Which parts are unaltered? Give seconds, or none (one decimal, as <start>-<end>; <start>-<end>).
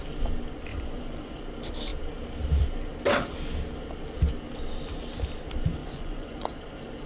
0.0-0.7; 1.4-5.8; 6.6-7.1